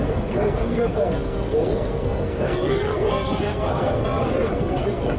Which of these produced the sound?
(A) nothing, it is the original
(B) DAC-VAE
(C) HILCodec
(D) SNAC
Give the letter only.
D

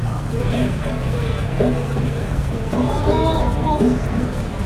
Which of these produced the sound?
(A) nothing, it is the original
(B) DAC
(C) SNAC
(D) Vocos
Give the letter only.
C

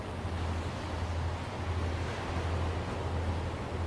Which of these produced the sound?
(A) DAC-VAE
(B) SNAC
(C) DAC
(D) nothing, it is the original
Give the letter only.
D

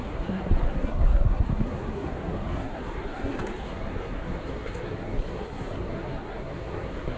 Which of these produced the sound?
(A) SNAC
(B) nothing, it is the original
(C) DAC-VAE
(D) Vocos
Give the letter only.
A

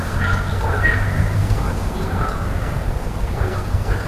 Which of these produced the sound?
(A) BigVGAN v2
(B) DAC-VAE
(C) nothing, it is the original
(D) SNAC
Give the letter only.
D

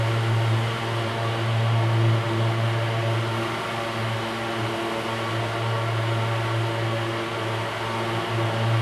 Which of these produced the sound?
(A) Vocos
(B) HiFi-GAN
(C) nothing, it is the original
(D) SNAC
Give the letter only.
C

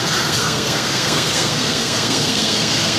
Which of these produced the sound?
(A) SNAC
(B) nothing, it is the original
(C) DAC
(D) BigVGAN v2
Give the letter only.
A